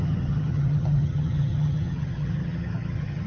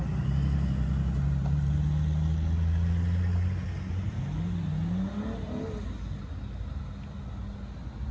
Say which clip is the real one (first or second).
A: second